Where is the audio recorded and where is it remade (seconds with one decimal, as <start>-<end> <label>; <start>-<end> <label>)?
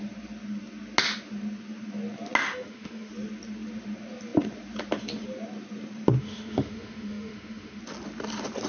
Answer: 0.0-2.4 recorded; 2.4-3.1 remade; 3.1-6.2 recorded; 6.2-7.8 remade; 7.8-8.7 recorded